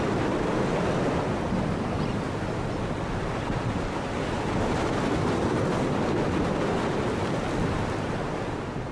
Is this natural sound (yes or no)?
yes